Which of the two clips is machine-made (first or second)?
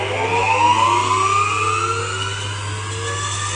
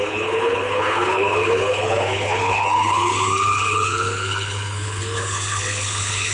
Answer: second